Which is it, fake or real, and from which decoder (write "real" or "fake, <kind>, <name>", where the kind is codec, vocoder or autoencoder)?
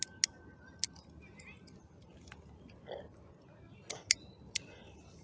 real